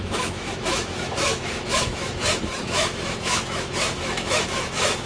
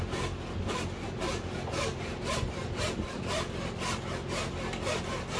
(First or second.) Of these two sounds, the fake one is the first